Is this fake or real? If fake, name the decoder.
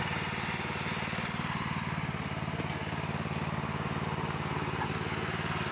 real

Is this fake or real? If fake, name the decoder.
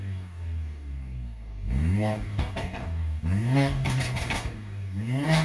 fake, codec, DAC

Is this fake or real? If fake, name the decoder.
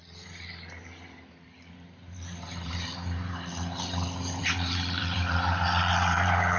fake, vocoder, BigVGAN v2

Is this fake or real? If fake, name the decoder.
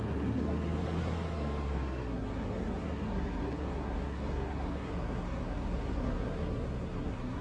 fake, codec, SNAC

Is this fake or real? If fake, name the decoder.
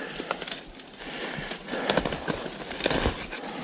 real